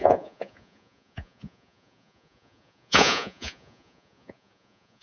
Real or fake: fake